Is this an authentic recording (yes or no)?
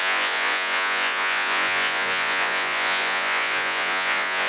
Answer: no